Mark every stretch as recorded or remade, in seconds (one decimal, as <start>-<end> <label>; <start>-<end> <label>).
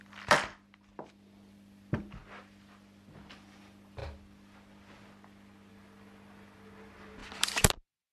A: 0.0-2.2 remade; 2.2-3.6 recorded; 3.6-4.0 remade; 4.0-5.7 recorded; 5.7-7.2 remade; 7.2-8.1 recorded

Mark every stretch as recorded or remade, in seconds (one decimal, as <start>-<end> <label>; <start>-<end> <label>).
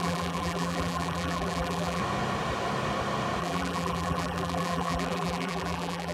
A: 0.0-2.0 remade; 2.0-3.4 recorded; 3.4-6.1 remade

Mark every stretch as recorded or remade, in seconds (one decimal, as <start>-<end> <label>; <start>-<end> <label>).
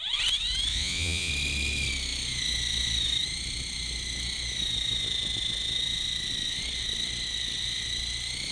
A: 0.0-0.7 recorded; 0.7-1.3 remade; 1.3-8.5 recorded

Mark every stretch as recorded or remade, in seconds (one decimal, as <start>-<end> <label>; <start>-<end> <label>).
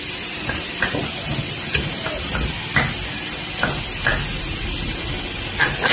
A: 0.0-5.9 recorded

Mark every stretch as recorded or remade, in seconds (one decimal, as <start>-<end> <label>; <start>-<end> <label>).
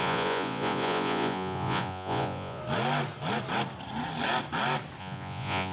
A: 0.0-2.6 remade; 2.6-5.0 recorded; 5.0-5.7 remade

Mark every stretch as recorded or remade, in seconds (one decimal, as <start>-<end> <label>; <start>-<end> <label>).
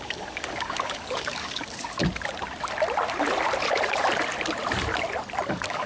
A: 0.0-2.0 remade; 2.0-5.5 recorded; 5.5-5.9 remade